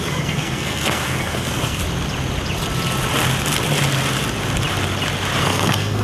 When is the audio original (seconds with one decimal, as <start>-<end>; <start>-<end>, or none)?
1.8-5.4